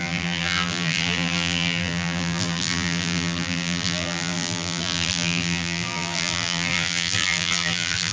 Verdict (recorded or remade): remade